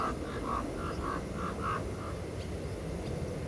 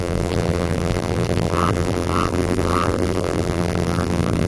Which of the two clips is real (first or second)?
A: first